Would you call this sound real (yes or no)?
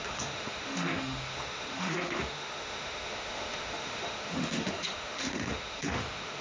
no